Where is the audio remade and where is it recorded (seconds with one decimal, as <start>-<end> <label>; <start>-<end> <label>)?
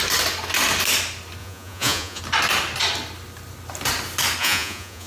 0.0-1.4 recorded; 1.4-2.2 remade; 2.2-4.4 recorded; 4.4-5.1 remade